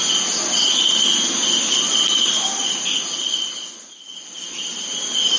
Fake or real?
real